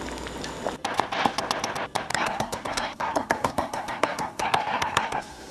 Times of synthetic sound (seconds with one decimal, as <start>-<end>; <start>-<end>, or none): 2.1-5.5